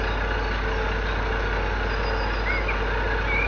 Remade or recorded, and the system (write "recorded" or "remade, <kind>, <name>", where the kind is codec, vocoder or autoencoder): recorded